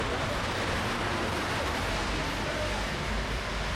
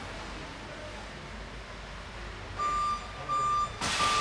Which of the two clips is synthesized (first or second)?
first